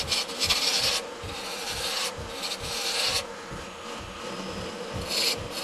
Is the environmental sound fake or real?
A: real